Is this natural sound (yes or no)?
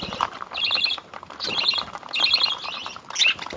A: yes